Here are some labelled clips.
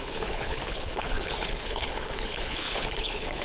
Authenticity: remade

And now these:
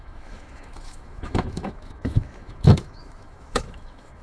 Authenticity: remade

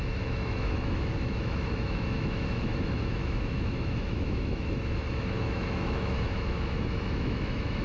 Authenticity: remade